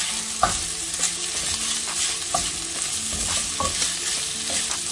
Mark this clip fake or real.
real